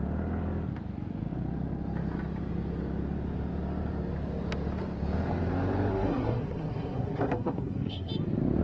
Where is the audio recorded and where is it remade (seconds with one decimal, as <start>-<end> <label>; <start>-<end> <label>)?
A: 0.0-5.9 recorded; 5.9-8.1 remade; 8.1-8.6 recorded

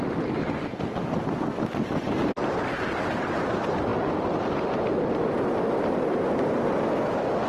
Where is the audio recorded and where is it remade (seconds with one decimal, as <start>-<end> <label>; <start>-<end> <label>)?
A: 0.0-7.5 recorded

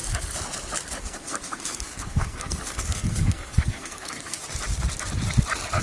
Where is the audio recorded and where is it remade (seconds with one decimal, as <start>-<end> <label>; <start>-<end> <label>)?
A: 0.0-1.0 recorded; 1.0-4.4 remade; 4.4-5.8 recorded

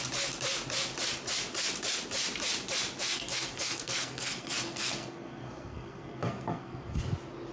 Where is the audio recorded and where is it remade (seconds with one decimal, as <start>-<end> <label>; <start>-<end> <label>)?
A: 0.0-3.1 recorded; 3.1-7.0 remade; 7.0-7.5 recorded

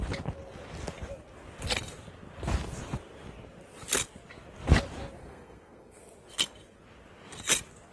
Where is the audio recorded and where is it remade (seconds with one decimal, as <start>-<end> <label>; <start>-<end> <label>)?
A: 0.0-5.2 recorded; 5.2-6.0 remade; 6.0-7.9 recorded

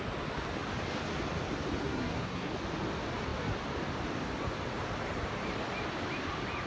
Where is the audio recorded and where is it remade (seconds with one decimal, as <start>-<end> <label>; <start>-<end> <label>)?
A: 0.0-1.8 recorded; 1.8-2.5 remade; 2.5-6.7 recorded

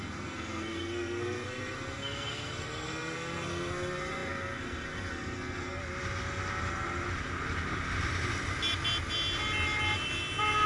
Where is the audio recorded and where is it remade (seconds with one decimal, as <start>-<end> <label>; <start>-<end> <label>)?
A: 0.0-5.8 remade; 5.8-10.7 recorded

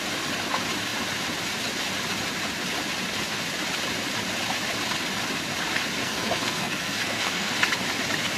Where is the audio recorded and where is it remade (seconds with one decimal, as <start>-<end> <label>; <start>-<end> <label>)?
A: 0.0-6.0 recorded; 6.0-7.5 remade; 7.5-8.4 recorded